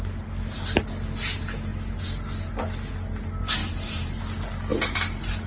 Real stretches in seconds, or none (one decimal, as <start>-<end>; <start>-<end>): 0.0-3.6; 4.2-5.5